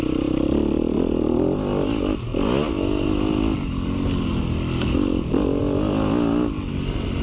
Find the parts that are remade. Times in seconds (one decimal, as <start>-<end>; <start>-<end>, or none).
none